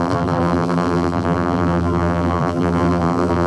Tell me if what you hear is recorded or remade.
remade